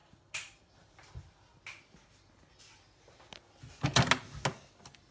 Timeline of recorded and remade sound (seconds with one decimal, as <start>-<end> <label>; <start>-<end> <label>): 0.0-5.1 recorded